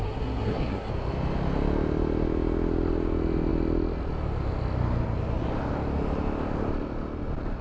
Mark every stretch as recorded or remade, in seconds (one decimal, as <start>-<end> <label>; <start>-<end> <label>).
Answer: 0.0-0.9 remade; 0.9-7.6 recorded